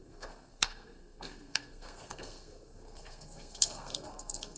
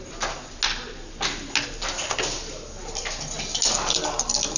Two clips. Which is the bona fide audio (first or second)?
second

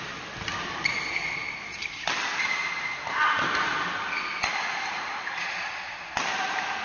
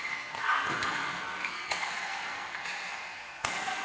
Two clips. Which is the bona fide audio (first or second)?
first